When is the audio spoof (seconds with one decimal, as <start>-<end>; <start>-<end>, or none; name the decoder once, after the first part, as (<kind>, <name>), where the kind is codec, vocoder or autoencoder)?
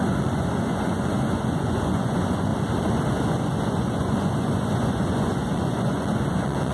0.0-2.5 (vocoder, Vocos); 3.1-6.7